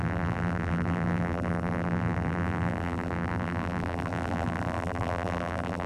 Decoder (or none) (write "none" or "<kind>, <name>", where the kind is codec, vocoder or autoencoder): vocoder, BigVGAN v2